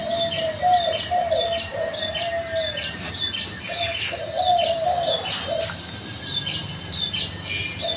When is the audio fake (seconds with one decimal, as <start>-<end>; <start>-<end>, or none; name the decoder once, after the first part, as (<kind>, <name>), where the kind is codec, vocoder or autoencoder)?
none